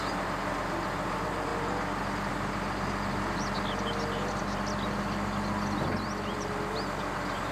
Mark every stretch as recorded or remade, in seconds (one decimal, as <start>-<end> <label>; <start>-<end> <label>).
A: 0.0-7.5 recorded